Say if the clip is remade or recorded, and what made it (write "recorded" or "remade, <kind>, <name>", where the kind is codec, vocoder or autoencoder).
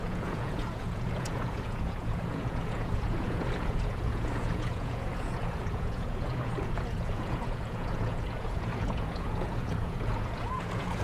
remade, vocoder, Vocos